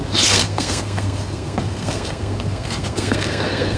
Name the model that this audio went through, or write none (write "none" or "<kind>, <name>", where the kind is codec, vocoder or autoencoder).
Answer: codec, SNAC